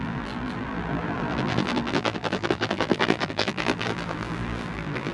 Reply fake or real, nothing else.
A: fake